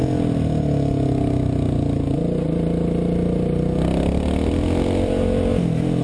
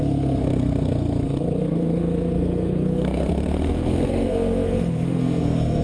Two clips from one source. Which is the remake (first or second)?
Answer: second